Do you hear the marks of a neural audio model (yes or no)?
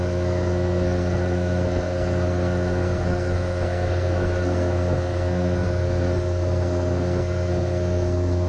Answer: yes